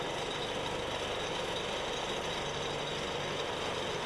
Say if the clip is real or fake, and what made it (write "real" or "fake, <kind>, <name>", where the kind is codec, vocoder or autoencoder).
real